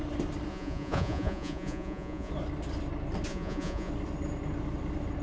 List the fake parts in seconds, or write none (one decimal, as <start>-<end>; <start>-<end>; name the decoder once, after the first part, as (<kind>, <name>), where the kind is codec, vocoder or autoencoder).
0.5-2.3 (vocoder, Vocos); 3.3-3.9